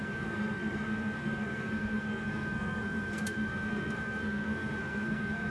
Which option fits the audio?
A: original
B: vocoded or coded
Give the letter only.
B